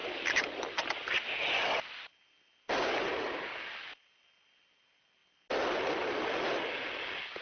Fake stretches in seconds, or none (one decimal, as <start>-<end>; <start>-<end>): none